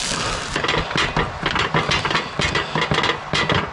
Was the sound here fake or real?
real